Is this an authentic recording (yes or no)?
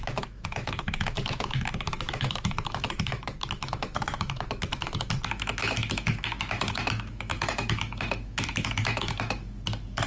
no